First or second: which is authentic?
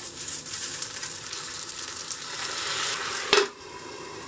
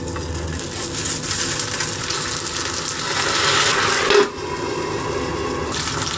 second